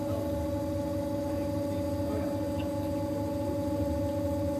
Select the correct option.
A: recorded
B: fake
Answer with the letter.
A